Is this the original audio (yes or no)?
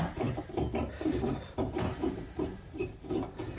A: no